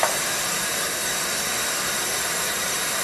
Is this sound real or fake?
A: fake